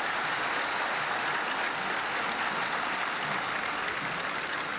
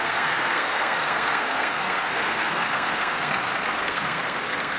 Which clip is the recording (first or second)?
first